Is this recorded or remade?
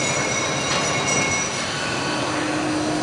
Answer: recorded